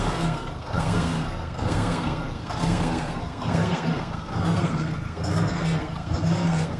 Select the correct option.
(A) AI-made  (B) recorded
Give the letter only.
A